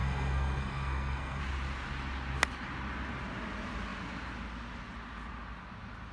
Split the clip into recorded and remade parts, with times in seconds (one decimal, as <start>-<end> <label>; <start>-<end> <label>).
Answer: 0.0-1.4 remade; 1.4-6.1 recorded